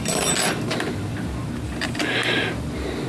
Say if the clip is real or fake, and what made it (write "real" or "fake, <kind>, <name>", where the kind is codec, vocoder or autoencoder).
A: real